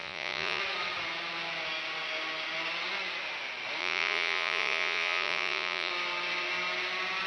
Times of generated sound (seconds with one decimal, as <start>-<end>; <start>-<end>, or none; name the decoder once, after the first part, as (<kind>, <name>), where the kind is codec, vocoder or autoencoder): 0.0-0.6 (vocoder, Vocos); 3.8-5.9